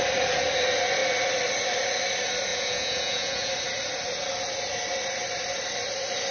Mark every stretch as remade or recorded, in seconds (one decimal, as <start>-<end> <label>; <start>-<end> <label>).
0.0-2.5 recorded; 2.5-3.5 remade; 3.5-6.3 recorded